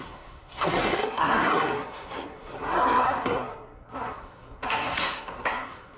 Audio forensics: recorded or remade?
remade